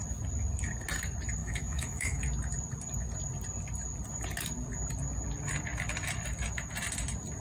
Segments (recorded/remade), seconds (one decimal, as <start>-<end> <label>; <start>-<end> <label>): 0.0-1.4 recorded; 1.4-2.2 remade; 2.2-7.4 recorded